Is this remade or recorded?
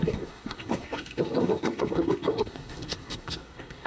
remade